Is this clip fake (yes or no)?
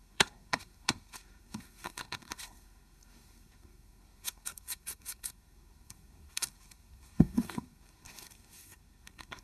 yes